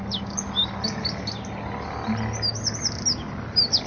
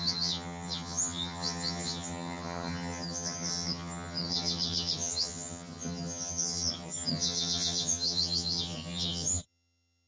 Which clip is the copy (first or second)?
second